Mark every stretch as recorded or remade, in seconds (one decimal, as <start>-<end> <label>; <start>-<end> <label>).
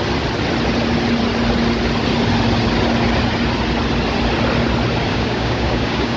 0.0-5.1 recorded; 5.1-6.2 remade